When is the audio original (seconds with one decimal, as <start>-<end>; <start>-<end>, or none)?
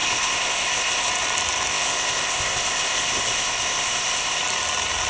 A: 1.1-1.7; 4.4-5.1